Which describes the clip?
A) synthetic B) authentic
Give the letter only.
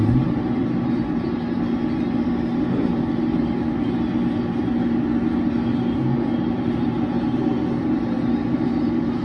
B